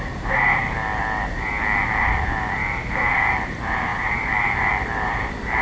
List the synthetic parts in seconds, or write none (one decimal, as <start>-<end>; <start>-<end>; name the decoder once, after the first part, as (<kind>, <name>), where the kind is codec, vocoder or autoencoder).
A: 0.0-0.9 (vocoder, BigVGAN v2); 2.0-5.6